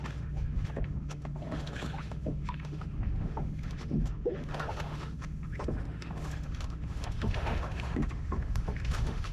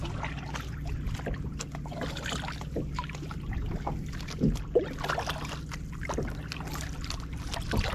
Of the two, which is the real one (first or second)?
second